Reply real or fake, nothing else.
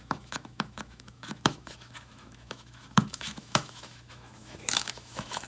fake